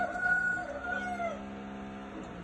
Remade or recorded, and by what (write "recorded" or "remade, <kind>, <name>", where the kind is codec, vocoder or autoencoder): recorded